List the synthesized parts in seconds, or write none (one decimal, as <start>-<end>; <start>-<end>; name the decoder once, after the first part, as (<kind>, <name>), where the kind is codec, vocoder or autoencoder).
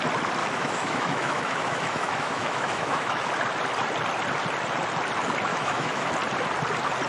0.4-3.3 (autoencoder, DAC-VAE); 5.5-6.1